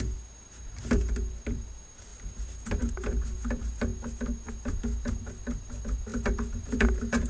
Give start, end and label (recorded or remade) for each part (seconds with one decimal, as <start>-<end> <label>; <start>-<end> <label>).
0.0-2.1 remade; 2.1-2.9 recorded; 2.9-3.9 remade; 3.9-4.5 recorded; 4.5-7.3 remade

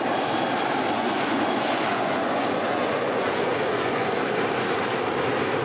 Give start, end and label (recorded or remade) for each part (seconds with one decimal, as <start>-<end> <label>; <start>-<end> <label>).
0.0-1.0 recorded; 1.0-4.2 remade; 4.2-5.6 recorded

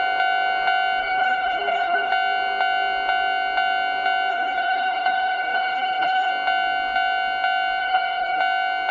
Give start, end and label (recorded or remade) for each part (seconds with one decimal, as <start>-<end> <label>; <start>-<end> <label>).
0.0-1.0 recorded; 1.0-2.1 remade; 2.1-4.3 recorded; 4.3-6.3 remade; 6.3-7.8 recorded; 7.8-8.4 remade; 8.4-8.9 recorded

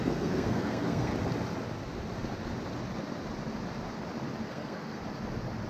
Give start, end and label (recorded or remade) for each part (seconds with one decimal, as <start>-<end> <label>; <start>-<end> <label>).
0.0-1.1 remade; 1.1-4.5 recorded; 4.5-5.0 remade; 5.0-5.7 recorded